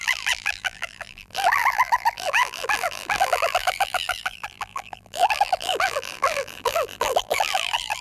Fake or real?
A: fake